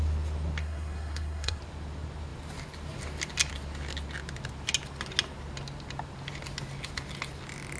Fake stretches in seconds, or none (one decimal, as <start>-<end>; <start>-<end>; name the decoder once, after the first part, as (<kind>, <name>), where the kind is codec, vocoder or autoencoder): 0.6-1.6 (codec, SNAC)